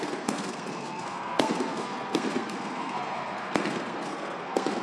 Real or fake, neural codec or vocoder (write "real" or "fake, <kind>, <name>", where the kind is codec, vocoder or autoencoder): fake, codec, SNAC